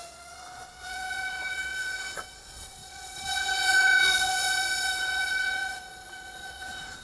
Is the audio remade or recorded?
remade